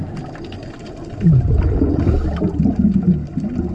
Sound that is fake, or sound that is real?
real